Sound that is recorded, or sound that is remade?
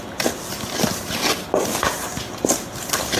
recorded